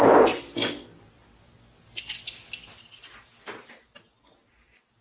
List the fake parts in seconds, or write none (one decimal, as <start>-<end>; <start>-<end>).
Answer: none